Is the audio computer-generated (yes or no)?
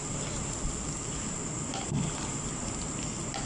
no